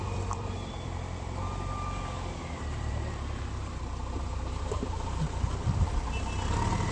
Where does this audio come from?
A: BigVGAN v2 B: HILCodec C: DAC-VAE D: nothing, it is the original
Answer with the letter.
A